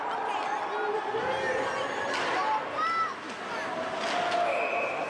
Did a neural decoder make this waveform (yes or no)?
no